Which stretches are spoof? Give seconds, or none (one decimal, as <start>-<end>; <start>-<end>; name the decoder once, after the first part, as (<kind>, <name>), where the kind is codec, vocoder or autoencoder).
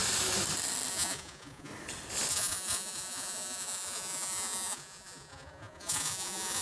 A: 0.9-1.7 (vocoder, Vocos); 2.3-6.6